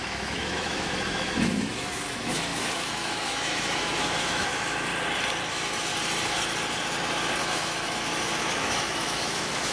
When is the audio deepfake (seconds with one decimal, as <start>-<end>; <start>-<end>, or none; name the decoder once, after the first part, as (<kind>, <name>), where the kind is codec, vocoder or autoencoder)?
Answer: 0.0-4.9 (autoencoder, DAC-VAE); 5.5-5.9; 7.4-9.7